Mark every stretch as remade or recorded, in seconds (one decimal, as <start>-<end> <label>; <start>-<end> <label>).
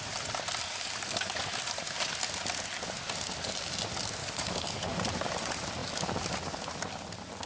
0.0-0.6 recorded; 0.6-1.4 remade; 1.4-4.2 recorded; 4.2-4.9 remade; 4.9-7.5 recorded